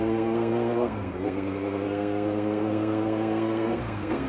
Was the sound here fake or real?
fake